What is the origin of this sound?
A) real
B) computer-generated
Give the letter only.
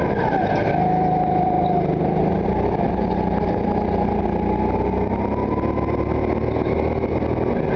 A